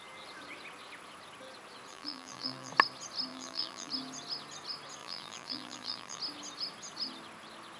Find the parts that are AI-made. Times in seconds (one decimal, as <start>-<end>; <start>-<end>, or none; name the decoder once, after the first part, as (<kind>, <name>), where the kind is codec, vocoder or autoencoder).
1.9-2.7 (vocoder, BigVGAN v2); 3.3-3.9; 5.0-6.2